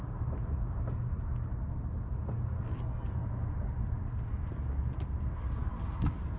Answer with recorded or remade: recorded